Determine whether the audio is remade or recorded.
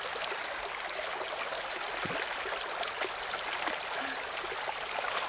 recorded